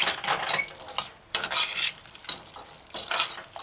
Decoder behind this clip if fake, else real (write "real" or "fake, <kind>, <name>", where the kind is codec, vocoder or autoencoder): fake, vocoder, BigVGAN v2